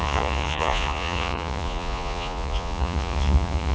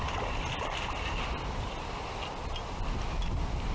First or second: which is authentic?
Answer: second